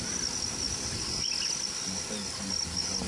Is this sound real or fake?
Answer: real